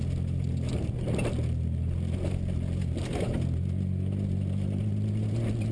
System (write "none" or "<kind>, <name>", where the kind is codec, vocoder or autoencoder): none